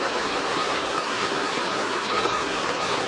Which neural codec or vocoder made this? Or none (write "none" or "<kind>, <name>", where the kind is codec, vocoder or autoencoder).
codec, SNAC